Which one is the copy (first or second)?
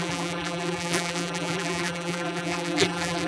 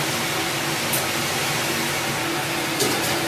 first